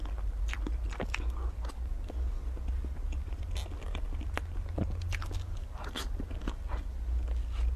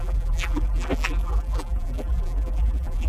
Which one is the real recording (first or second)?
first